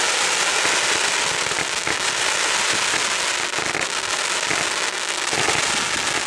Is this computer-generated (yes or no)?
no